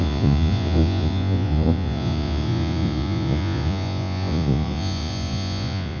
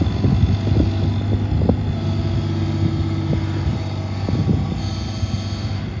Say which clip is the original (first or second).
second